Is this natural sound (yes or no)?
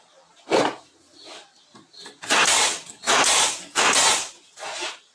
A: yes